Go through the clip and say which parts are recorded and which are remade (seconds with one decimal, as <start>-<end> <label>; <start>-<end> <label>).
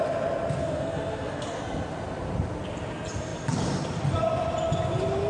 0.0-0.6 recorded; 0.6-1.6 remade; 1.6-5.3 recorded